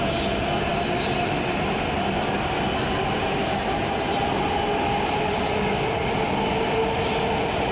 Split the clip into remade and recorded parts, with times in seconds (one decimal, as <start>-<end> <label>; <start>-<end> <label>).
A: 0.0-7.7 recorded